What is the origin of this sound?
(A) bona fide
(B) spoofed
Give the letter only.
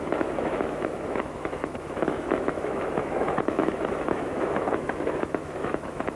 B